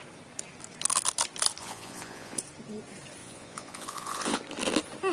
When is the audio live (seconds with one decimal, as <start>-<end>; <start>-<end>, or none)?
0.0-1.6; 2.4-3.2; 4.4-5.1